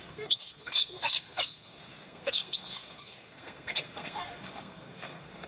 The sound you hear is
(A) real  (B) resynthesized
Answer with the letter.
B